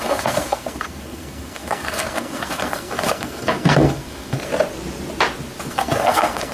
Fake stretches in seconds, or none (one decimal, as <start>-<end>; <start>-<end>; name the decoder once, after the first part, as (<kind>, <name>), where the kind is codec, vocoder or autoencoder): 0.0-4.5 (codec, SNAC); 5.7-6.5